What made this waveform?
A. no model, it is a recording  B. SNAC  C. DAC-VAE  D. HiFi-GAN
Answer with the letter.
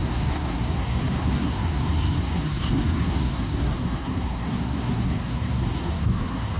B